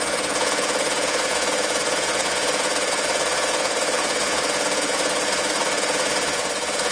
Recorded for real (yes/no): no